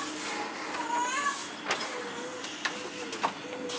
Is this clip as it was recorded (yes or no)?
yes